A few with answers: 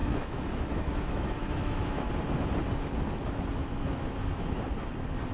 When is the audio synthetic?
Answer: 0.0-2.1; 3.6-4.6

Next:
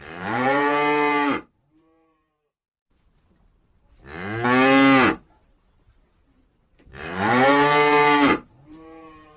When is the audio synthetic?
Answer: 0.0-2.7; 6.5-9.4

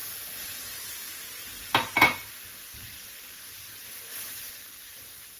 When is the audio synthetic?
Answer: 0.0-5.4

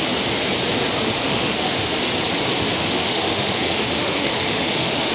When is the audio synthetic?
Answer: 1.2-2.0; 2.8-5.1

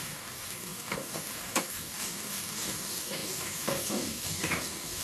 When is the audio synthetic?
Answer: 0.0-5.0

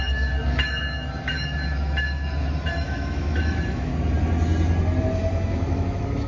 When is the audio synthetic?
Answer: 0.0-3.9; 5.0-6.3